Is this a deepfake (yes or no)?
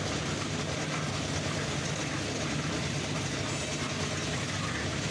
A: no